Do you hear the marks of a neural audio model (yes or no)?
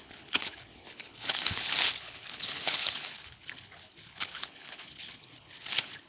yes